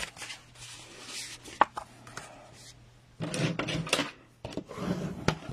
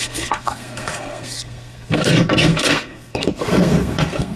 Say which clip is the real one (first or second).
first